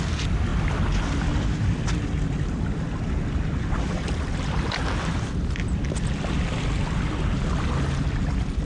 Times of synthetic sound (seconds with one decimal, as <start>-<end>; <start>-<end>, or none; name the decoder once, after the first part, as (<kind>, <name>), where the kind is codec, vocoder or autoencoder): none